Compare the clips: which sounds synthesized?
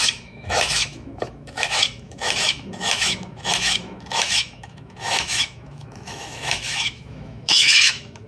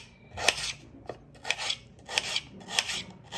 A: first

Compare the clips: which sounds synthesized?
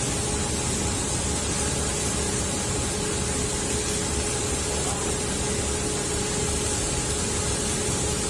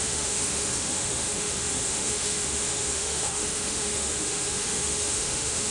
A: second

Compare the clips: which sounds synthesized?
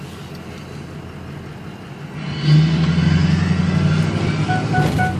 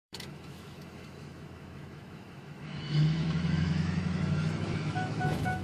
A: second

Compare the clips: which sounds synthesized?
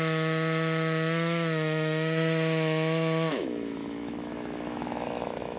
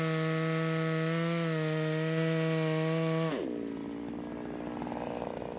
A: first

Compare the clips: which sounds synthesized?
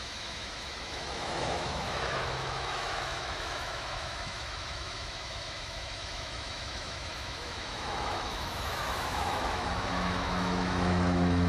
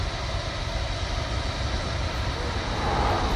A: first